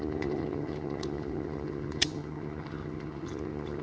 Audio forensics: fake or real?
fake